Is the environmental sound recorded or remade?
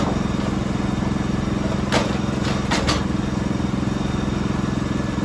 recorded